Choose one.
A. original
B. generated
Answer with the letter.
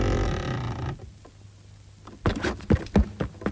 A